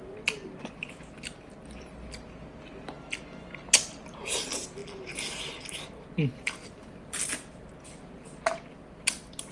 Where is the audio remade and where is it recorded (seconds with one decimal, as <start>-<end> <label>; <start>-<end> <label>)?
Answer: 0.0-9.5 recorded